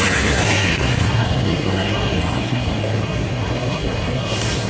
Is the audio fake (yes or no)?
yes